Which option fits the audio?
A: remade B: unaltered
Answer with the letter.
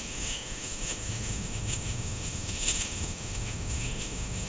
A